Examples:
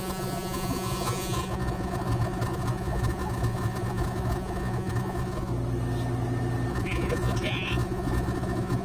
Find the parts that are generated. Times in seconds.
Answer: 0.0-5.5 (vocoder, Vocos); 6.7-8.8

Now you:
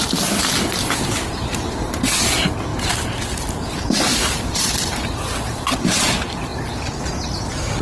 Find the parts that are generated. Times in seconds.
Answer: 2.7-5.7 (vocoder, BigVGAN v2); 6.5-7.0

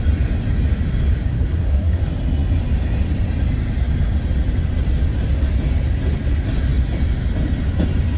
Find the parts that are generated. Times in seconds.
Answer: 1.3-2.0 (codec, SNAC)

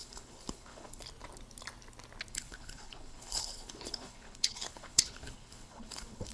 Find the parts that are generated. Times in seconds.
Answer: 0.0-1.0 (codec, HILCodec); 2.3-6.3

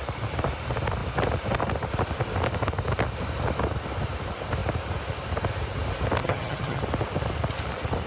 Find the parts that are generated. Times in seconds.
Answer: 6.2-6.8 (vocoder, HiFi-GAN)

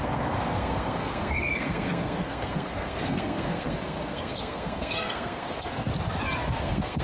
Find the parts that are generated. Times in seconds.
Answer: 0.0-5.9 (codec, SNAC); 6.6-7.0

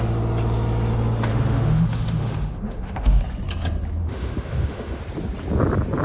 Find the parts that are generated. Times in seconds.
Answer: 1.3-3.2 (autoencoder, DAC-VAE); 4.0-5.0

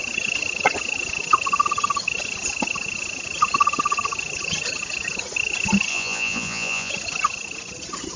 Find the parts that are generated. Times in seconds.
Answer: 5.9-6.9 (vocoder, Vocos)